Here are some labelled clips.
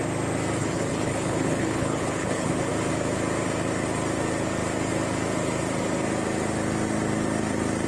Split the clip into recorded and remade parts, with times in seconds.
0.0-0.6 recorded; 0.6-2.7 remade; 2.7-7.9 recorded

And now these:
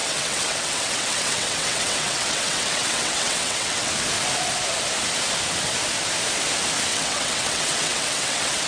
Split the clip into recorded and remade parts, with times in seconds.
0.0-3.9 remade; 3.9-6.9 recorded; 6.9-8.7 remade

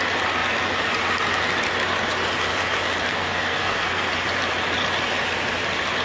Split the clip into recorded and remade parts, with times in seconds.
0.0-3.1 recorded; 3.1-4.1 remade; 4.1-6.0 recorded